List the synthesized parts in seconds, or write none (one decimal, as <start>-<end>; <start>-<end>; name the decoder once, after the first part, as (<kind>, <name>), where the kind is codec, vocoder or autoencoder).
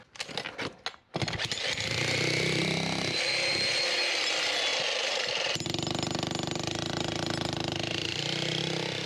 4.7-5.3 (vocoder, BigVGAN v2); 7.6-8.6